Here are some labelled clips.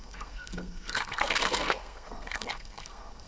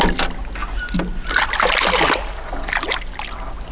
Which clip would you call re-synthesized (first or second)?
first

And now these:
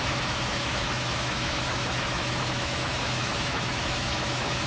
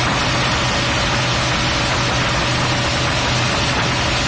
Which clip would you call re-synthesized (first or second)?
first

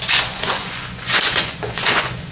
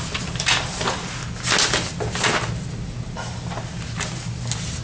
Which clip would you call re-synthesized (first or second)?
first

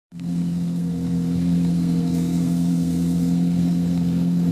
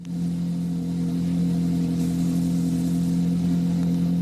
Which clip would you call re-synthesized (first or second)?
first